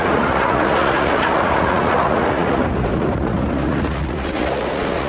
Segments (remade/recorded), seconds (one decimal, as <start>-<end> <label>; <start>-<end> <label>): 0.0-5.1 remade